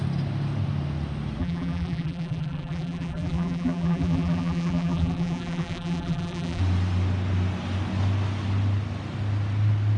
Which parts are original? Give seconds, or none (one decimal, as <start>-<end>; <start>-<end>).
0.0-1.4; 6.6-10.0